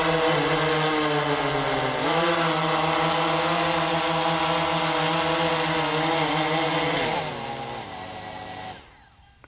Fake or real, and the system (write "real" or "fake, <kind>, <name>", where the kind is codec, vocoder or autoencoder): real